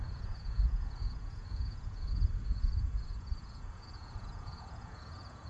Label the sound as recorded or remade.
remade